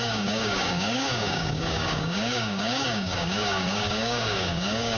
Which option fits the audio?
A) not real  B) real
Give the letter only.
A